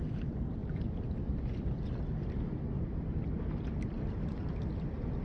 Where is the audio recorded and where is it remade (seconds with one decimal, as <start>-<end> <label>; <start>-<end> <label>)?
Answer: 0.0-5.2 recorded